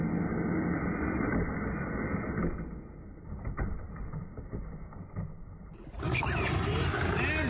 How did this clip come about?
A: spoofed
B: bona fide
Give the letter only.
B